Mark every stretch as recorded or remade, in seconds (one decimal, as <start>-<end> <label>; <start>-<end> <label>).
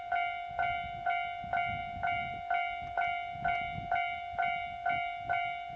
0.0-5.8 recorded